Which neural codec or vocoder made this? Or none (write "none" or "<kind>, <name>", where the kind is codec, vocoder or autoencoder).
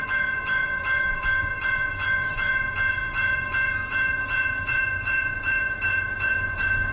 vocoder, Vocos